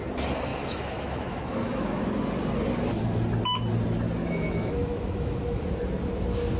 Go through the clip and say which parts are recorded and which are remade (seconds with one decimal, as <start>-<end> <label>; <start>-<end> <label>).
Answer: 0.0-0.5 recorded; 0.5-2.0 remade; 2.0-4.2 recorded; 4.2-5.6 remade; 5.6-6.6 recorded